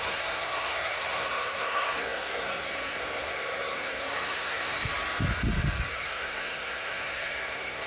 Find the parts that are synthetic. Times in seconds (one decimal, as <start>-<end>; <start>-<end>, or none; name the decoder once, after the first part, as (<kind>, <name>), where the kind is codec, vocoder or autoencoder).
0.0-4.9 (codec, SNAC); 5.9-7.9